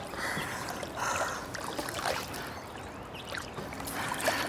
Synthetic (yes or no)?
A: yes